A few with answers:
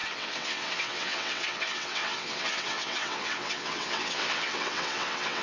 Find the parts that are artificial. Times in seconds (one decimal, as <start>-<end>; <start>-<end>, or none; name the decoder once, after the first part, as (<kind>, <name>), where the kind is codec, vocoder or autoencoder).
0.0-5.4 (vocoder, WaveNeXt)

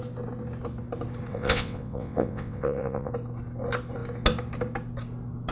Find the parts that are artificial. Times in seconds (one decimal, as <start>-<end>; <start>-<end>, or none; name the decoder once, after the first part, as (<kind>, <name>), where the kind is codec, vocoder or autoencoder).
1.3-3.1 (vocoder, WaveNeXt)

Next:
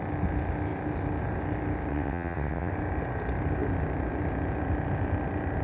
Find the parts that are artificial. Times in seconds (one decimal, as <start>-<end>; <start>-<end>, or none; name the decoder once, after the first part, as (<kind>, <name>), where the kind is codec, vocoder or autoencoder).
1.9-2.7 (vocoder, WaveNeXt)

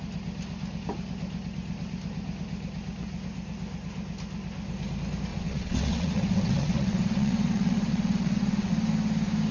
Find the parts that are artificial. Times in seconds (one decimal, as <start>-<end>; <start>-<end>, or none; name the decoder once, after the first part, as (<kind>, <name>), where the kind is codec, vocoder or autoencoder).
5.3-8.7 (vocoder, WaveNeXt)

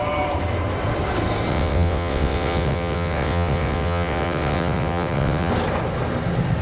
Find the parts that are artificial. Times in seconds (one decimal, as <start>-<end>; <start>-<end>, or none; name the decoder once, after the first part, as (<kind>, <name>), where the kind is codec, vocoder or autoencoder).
1.5-5.5 (vocoder, WaveNeXt)